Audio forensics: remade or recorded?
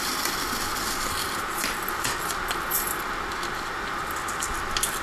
recorded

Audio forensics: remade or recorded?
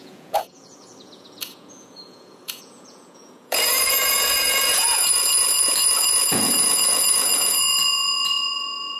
remade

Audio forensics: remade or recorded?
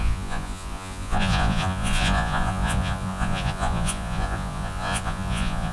remade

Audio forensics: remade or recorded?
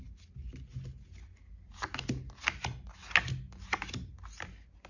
recorded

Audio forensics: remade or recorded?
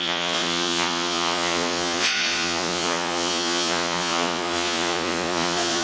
remade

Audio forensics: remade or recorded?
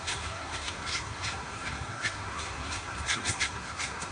remade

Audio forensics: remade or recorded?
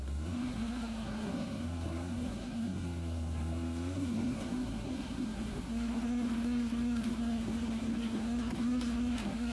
remade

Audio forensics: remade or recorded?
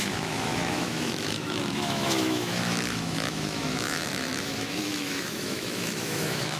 remade